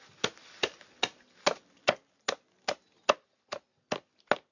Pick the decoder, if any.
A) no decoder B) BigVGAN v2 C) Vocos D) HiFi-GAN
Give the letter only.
A